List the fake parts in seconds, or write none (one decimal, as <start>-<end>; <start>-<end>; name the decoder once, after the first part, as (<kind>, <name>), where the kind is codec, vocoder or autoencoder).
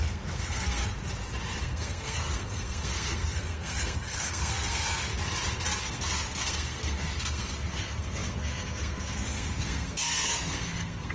0.0-0.8 (codec, SNAC); 1.6-5.1; 5.8-11.1